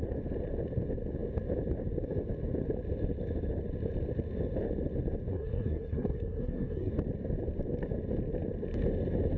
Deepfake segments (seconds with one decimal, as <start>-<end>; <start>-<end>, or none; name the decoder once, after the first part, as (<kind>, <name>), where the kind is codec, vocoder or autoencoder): 5.3-6.9 (codec, SNAC)